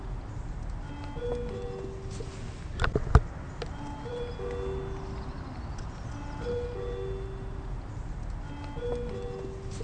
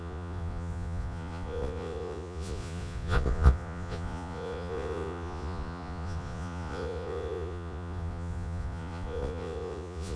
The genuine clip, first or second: first